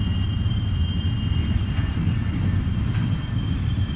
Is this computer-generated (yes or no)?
no